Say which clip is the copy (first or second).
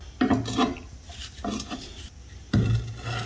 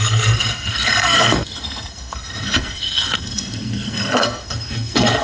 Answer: second